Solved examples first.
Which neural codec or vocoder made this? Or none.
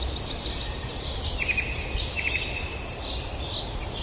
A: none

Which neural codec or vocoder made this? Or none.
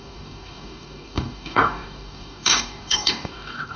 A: codec, DAC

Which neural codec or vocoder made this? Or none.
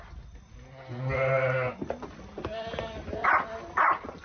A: none